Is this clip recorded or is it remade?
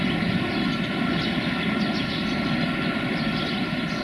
recorded